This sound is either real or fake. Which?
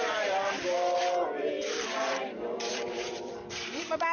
fake